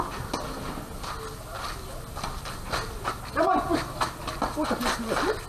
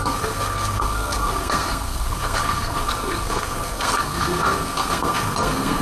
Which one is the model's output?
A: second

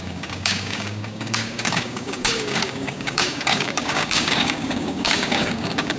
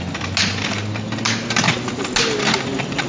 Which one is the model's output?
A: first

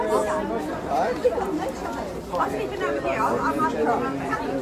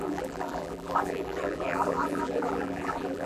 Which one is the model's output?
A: second